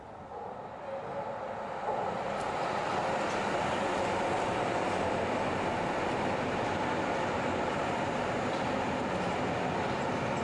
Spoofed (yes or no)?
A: no